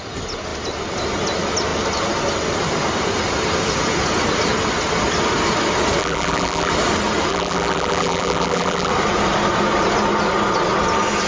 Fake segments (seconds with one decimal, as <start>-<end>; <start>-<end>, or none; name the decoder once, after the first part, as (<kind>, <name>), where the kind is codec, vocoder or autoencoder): 6.0-6.7 (vocoder, BigVGAN v2); 7.3-8.9